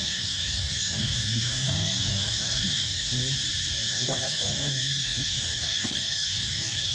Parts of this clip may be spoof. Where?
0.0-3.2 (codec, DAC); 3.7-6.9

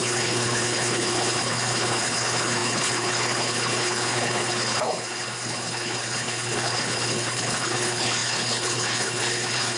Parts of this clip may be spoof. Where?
0.0-9.8 (codec, HILCodec)